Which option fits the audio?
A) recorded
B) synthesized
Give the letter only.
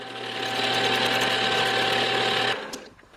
A